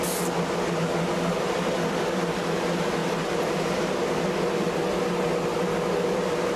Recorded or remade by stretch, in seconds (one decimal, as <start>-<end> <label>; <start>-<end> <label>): 0.0-3.0 recorded; 3.0-3.5 remade; 3.5-6.6 recorded